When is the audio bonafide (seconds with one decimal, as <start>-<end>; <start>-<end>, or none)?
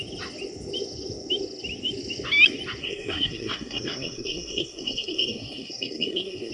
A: 0.0-2.8